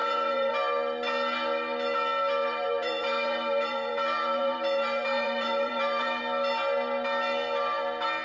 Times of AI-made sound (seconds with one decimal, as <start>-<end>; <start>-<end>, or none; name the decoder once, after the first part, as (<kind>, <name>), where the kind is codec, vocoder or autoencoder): 0.0-0.5 (vocoder, BigVGAN v2); 2.4-6.2